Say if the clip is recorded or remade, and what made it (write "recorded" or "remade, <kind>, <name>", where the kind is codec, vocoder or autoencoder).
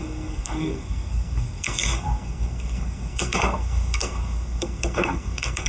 remade, codec, SNAC